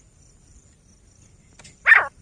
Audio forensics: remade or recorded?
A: recorded